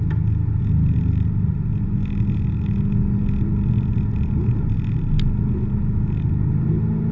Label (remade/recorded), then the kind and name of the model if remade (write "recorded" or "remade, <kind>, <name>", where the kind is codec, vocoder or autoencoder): recorded